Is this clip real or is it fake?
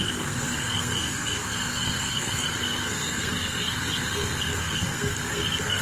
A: fake